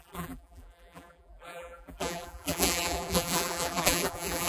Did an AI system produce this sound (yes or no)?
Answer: yes